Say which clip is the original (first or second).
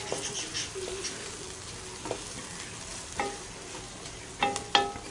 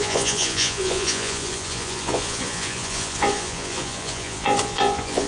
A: first